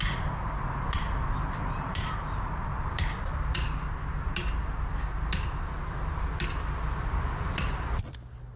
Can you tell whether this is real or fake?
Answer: real